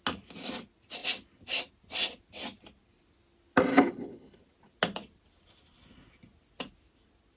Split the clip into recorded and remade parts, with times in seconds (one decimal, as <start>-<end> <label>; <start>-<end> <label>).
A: 0.0-3.7 recorded; 3.7-4.4 remade; 4.4-7.4 recorded